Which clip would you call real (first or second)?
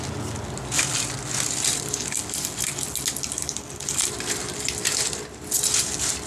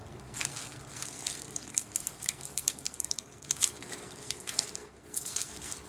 first